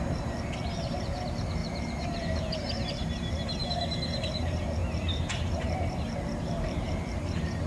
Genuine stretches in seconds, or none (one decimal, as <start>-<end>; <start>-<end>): none